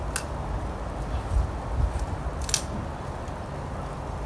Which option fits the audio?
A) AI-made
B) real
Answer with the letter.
B